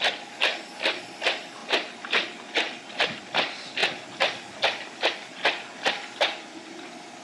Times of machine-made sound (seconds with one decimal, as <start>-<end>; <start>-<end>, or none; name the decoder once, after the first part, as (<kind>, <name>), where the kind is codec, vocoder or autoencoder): none